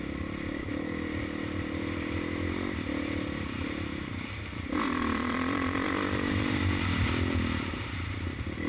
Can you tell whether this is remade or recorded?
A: remade